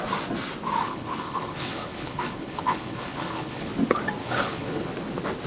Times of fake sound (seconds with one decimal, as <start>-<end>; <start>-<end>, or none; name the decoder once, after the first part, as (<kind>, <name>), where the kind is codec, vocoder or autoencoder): 0.8-3.7 (codec, HILCodec); 4.2-4.9